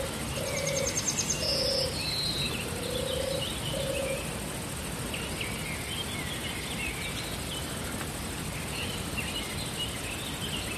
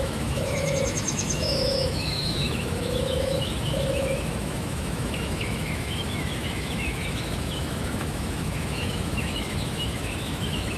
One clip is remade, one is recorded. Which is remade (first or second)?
second